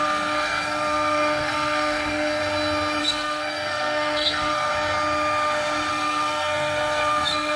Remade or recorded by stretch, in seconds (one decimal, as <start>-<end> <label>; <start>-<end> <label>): 0.0-2.4 remade; 2.4-3.0 recorded; 3.0-4.7 remade; 4.7-5.9 recorded; 5.9-7.6 remade